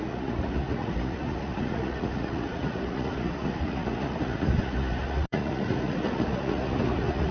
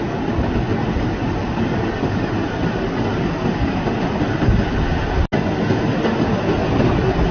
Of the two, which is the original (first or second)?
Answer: second